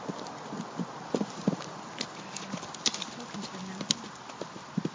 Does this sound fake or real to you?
real